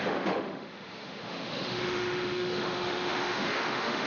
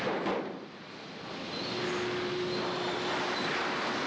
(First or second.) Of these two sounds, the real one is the second